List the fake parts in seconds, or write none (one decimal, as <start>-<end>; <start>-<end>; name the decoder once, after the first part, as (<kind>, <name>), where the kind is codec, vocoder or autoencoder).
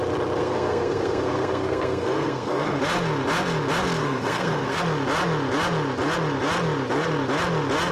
0.4-2.8 (codec, SNAC); 4.0-4.8